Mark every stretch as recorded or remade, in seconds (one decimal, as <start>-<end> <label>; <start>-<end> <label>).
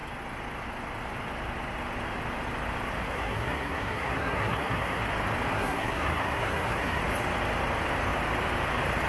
0.0-3.0 recorded; 3.0-5.0 remade; 5.0-5.5 recorded; 5.5-7.0 remade; 7.0-9.1 recorded